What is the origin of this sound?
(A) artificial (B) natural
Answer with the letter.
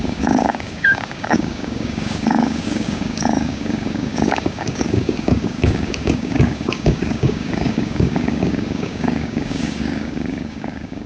A